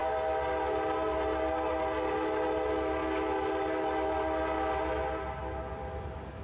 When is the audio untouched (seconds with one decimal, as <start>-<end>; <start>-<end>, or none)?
0.0-6.4